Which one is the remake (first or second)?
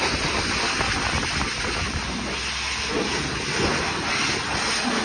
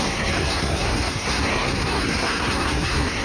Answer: second